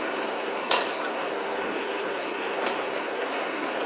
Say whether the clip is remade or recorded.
remade